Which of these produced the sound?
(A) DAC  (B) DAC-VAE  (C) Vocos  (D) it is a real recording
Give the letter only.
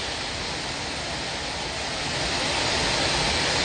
D